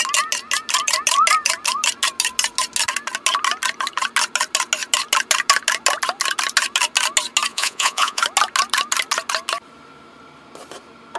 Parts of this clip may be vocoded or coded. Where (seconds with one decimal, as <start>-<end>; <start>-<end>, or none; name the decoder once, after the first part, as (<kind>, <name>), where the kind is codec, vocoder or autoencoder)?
7.5-8.2 (vocoder, Vocos)